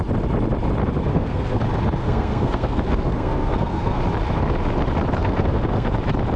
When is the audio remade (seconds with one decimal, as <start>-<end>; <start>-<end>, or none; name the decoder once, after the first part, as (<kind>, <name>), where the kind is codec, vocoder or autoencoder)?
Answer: 1.1-1.6 (codec, SNAC); 2.0-4.0; 5.2-5.9